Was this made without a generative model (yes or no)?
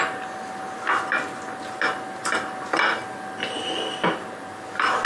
yes